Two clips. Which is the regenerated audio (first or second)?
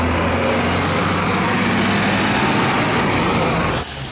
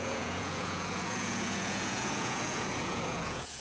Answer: second